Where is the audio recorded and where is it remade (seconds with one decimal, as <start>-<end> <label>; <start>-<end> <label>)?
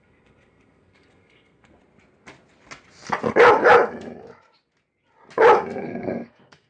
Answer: 0.0-1.8 remade; 1.8-5.8 recorded; 5.8-6.7 remade